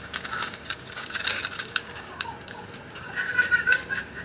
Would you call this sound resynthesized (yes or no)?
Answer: yes